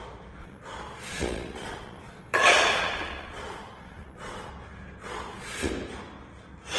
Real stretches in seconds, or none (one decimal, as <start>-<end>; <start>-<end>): 0.0-0.4; 4.5-5.0; 5.7-6.8